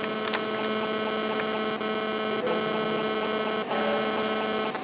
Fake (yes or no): no